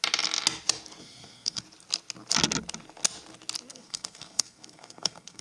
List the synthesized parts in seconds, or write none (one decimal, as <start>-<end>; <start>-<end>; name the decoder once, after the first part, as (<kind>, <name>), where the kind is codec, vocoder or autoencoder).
1.0-1.6 (codec, SNAC); 3.7-5.4